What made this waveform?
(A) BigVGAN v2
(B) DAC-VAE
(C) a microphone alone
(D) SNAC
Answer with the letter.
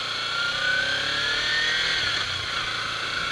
C